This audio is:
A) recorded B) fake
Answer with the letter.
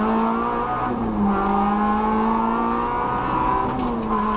A